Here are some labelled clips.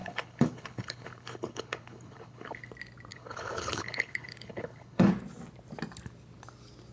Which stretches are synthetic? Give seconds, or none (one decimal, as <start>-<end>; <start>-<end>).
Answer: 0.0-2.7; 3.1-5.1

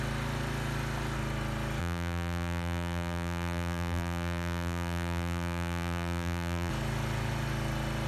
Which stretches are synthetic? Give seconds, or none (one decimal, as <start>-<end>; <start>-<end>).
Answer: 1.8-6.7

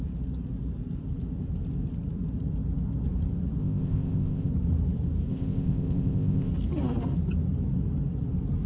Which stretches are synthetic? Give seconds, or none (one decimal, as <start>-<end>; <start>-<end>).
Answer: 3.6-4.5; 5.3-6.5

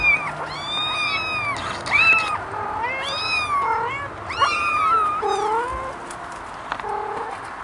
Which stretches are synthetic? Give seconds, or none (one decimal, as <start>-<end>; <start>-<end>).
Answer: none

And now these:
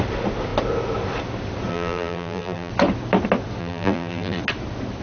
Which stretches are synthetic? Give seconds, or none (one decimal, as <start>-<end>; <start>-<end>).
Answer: 1.7-2.7; 3.6-4.4

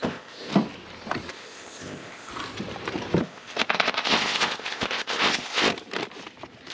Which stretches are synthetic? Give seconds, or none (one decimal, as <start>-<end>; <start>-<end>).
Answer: 0.0-0.5; 1.3-2.3; 3.2-5.7

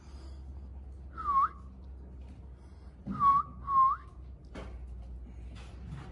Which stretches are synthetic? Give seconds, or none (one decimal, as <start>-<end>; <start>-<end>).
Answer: none

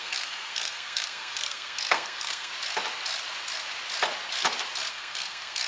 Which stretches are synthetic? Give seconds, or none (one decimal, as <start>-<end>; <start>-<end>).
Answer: 0.0-2.5; 4.9-5.7